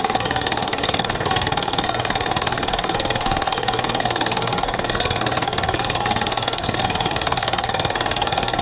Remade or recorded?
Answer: remade